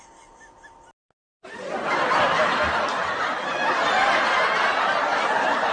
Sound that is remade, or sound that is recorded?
recorded